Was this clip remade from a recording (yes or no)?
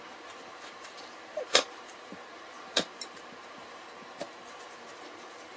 yes